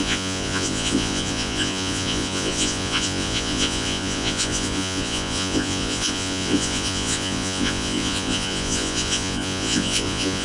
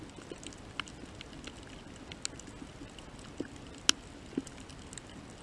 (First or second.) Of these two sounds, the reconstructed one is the first